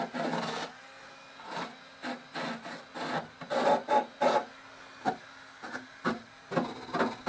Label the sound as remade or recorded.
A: recorded